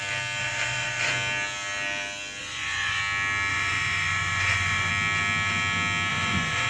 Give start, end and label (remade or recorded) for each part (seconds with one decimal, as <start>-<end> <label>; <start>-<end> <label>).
0.0-0.4 recorded; 0.4-1.1 remade; 1.1-2.4 recorded; 2.4-3.0 remade; 3.0-3.5 recorded; 3.5-4.9 remade; 4.9-6.1 recorded; 6.1-6.7 remade